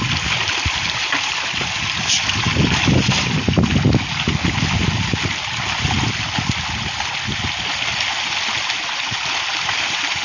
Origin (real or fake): real